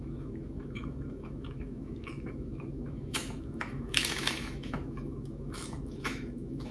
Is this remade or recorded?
remade